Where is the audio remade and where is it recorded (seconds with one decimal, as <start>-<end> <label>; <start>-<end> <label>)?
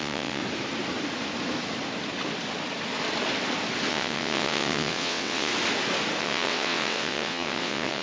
0.0-0.4 remade; 0.4-3.9 recorded; 3.9-5.5 remade; 5.5-6.2 recorded; 6.2-8.0 remade